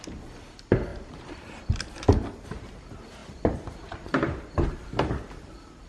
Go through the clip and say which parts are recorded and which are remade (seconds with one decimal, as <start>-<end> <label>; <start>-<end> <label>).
0.0-0.9 recorded; 0.9-2.8 remade; 2.8-3.2 recorded; 3.2-5.1 remade; 5.1-5.9 recorded